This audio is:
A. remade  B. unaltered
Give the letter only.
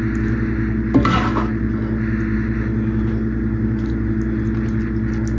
B